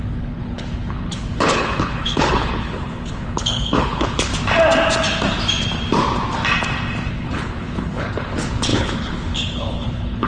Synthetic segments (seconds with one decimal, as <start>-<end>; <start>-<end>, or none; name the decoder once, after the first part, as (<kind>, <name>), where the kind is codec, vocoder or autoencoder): 0.0-4.3 (codec, HILCodec); 7.1-10.3